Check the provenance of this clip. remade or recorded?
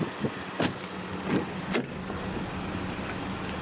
recorded